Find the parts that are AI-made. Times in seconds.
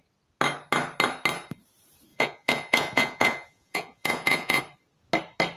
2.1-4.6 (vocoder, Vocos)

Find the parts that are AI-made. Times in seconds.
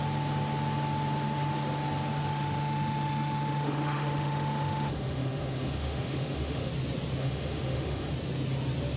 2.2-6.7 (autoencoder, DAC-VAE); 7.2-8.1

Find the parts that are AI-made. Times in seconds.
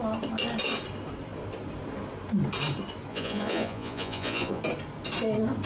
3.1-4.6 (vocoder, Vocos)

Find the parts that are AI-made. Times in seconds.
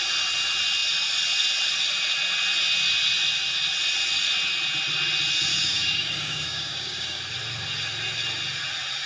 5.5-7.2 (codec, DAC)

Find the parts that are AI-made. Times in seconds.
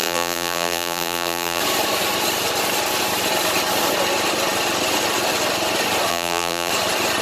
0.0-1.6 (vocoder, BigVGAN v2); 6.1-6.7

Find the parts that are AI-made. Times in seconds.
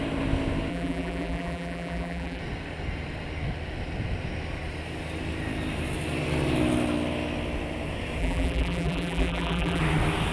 0.7-2.4 (vocoder, BigVGAN v2); 8.2-9.8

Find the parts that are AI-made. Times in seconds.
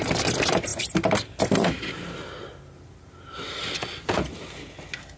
none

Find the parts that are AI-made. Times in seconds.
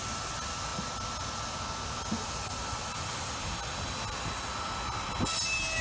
none